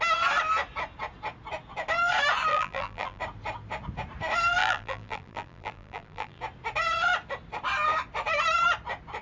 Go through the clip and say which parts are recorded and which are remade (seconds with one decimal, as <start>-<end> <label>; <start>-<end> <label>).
0.0-2.5 recorded; 2.5-3.2 remade; 3.2-4.6 recorded; 4.6-6.4 remade; 6.4-9.2 recorded